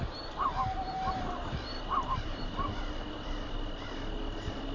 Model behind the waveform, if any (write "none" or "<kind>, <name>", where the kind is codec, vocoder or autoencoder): none